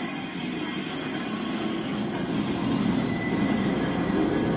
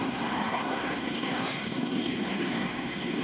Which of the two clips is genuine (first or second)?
first